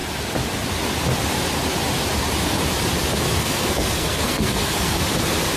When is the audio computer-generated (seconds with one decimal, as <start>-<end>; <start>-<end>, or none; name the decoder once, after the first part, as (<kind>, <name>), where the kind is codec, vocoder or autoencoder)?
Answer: 3.4-5.0 (codec, SNAC)